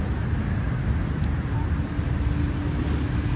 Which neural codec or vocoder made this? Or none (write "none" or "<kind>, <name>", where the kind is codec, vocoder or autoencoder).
none